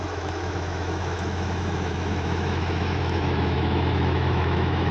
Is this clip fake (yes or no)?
yes